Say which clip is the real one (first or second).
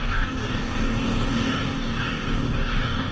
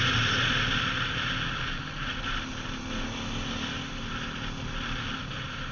second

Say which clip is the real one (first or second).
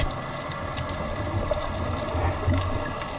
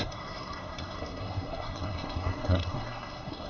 first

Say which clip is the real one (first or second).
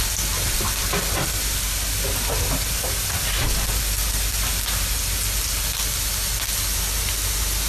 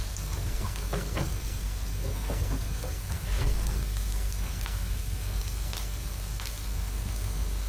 first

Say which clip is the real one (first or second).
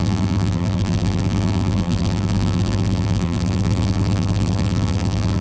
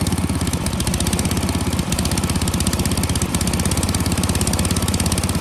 second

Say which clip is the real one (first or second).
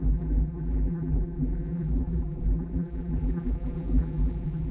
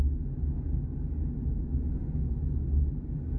second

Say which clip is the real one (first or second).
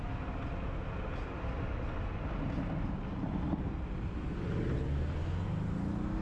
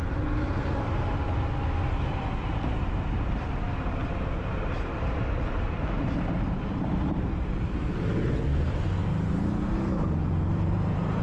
first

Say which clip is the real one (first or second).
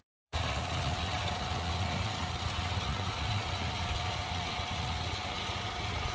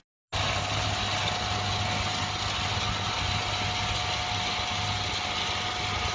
second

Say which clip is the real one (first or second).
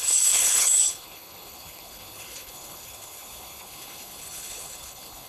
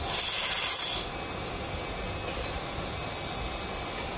second